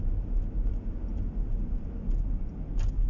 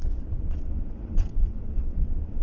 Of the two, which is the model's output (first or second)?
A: second